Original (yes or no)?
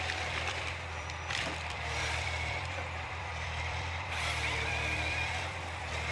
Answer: no